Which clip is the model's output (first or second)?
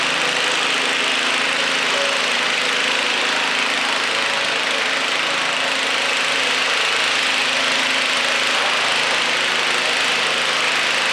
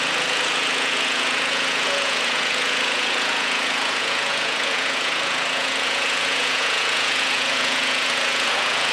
second